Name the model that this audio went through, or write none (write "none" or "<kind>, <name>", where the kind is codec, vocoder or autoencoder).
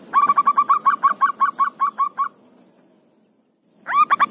none